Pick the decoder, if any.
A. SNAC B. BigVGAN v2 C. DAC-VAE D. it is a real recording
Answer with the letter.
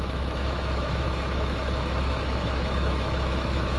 C